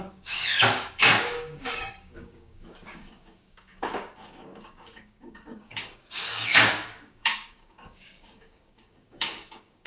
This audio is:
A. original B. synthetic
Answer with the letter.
B